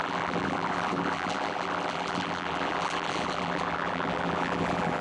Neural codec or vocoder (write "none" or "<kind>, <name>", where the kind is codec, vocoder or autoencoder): vocoder, BigVGAN v2